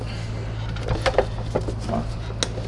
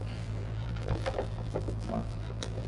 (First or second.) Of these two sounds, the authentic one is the first